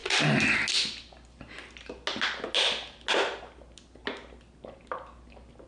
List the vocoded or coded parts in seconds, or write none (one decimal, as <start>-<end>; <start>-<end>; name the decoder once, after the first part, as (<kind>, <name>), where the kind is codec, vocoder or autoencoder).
none